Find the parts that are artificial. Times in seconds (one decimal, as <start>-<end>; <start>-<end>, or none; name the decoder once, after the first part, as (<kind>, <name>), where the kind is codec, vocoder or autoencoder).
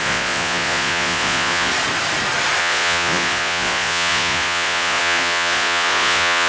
0.0-1.7 (vocoder, Vocos); 2.6-6.5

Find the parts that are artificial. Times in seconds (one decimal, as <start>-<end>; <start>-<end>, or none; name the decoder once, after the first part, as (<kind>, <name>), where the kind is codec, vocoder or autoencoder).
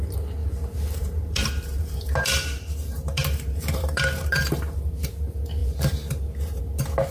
0.4-4.5 (vocoder, BigVGAN v2); 5.6-6.6